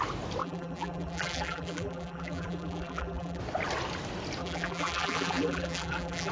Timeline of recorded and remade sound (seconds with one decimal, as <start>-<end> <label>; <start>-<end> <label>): 0.0-0.4 recorded; 0.4-3.4 remade; 3.4-4.4 recorded; 4.4-6.3 remade